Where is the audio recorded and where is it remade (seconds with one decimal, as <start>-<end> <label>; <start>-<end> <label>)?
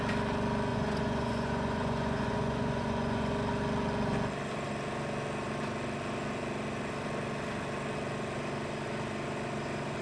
0.0-0.7 recorded; 0.7-3.3 remade; 3.3-10.0 recorded